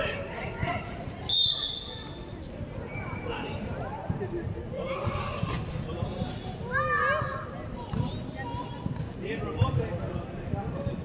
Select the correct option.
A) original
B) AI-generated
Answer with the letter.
A